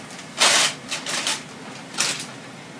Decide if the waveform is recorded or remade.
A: recorded